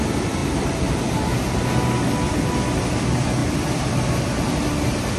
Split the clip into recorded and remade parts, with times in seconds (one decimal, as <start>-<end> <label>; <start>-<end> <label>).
0.0-0.4 recorded; 0.4-1.6 remade; 1.6-5.2 recorded